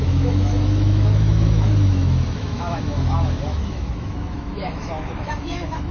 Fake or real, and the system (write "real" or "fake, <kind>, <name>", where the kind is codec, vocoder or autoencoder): fake, autoencoder, DAC-VAE